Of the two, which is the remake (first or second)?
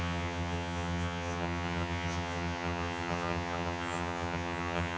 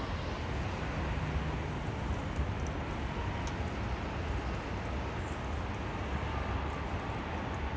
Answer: first